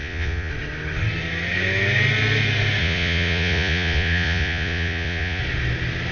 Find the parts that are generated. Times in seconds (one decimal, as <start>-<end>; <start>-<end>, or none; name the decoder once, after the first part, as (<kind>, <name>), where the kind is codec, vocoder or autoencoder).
0.0-0.5 (vocoder, Vocos); 2.8-5.4